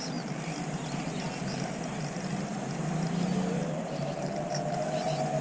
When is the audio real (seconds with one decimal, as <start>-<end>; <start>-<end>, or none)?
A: 0.0-5.4